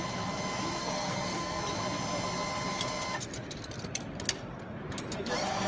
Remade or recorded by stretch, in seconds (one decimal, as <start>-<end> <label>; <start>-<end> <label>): 0.0-0.8 recorded; 0.8-1.6 remade; 1.6-5.7 recorded